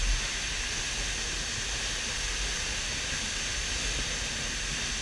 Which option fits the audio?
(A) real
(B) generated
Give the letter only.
A